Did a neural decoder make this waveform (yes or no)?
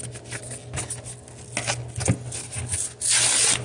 no